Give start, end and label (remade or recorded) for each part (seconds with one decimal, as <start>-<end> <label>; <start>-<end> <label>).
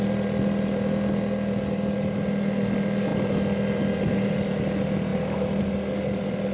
0.0-6.5 recorded